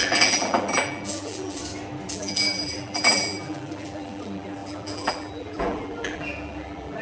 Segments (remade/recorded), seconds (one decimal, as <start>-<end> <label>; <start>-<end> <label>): 0.0-1.6 remade; 1.6-2.1 recorded; 2.1-7.0 remade